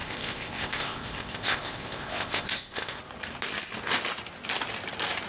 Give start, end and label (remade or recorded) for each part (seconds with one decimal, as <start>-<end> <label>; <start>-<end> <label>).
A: 0.0-3.0 remade; 3.0-5.3 recorded